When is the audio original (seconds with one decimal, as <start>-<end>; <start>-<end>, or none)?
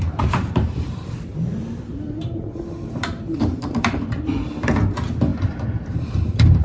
1.3-3.2